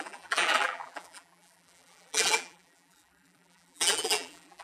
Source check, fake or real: fake